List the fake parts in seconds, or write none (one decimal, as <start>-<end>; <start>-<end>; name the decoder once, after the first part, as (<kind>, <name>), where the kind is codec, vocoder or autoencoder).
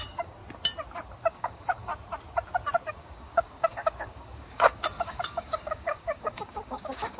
0.0-0.4 (codec, DAC); 1.3-1.9; 3.0-7.2